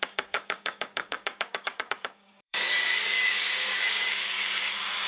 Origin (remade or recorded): remade